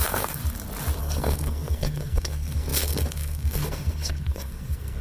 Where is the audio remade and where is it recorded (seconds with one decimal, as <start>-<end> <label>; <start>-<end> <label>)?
0.0-0.4 remade; 0.4-1.0 recorded; 1.0-5.0 remade